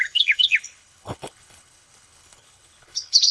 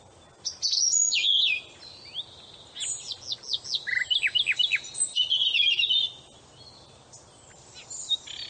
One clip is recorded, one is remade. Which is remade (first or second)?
first